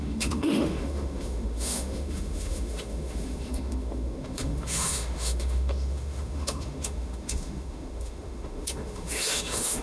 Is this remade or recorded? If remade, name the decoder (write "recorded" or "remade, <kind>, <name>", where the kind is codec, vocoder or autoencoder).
remade, autoencoder, DAC-VAE